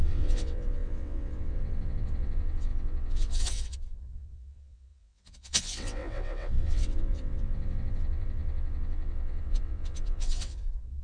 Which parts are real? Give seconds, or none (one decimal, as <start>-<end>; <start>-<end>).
none